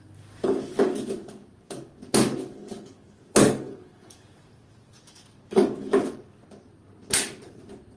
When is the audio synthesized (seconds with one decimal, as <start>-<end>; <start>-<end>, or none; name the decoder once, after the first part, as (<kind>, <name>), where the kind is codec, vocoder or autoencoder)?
0.0-6.4 (codec, DAC)